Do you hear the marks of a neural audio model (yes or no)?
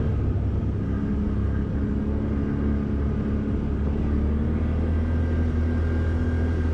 no